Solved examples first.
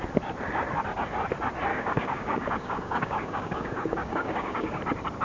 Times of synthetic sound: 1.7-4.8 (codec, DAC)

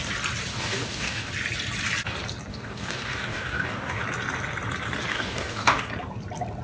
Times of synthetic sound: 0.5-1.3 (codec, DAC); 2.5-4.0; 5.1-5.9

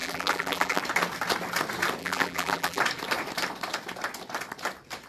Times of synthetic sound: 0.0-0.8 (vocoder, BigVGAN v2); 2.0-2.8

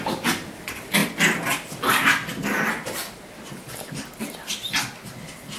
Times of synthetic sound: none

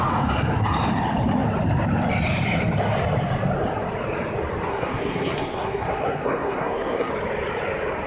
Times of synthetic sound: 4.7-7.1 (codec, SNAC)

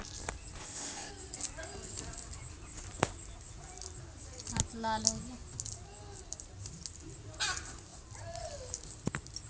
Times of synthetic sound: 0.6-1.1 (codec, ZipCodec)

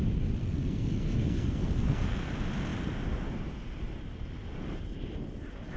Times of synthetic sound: 0.4-2.3 (codec, SNAC)